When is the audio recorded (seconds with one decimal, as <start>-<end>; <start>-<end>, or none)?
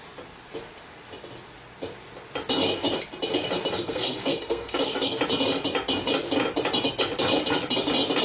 0.0-3.8; 5.2-8.2